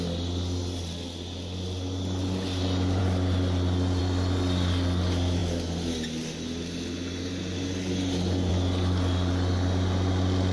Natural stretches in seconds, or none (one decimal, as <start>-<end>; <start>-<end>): 0.0-10.5

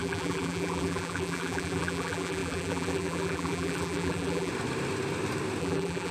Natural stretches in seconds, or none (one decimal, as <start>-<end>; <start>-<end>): 4.5-5.6

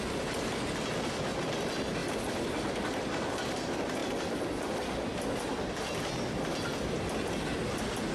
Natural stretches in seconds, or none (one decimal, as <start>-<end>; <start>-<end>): 0.0-8.1

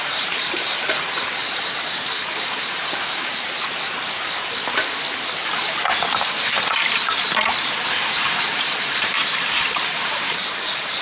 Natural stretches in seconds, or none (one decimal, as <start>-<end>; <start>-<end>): 3.3-7.9